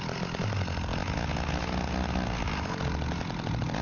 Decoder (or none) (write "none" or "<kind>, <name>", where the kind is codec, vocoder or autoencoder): none